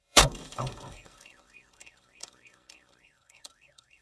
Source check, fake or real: fake